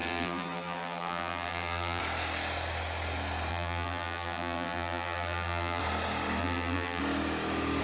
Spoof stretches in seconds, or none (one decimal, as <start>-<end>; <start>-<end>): 0.0-2.0; 3.5-5.8; 6.4-7.0